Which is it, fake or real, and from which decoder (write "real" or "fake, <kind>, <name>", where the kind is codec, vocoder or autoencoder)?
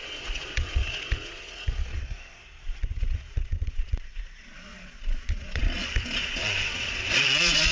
fake, vocoder, Vocos